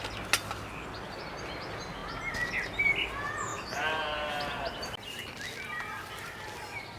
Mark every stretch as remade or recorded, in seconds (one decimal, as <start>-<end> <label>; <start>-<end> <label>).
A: 0.0-7.0 recorded